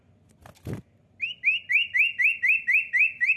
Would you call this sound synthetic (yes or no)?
no